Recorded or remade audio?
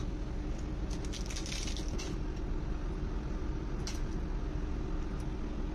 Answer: recorded